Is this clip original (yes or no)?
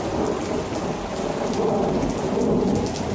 yes